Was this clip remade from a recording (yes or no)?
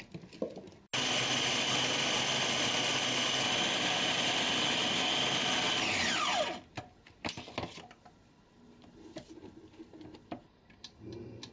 no